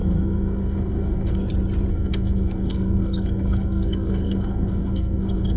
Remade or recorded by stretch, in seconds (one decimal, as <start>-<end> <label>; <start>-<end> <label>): 0.0-1.4 remade; 1.4-1.9 recorded; 1.9-5.6 remade